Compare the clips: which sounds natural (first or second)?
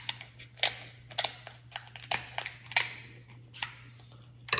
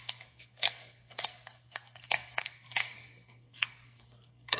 first